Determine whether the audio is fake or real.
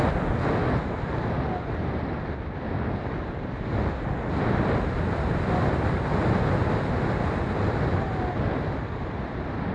real